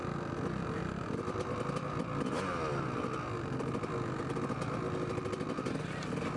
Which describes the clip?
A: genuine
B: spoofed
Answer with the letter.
A